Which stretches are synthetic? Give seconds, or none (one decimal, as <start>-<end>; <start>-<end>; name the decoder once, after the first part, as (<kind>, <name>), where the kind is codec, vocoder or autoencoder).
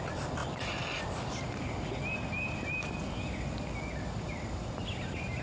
none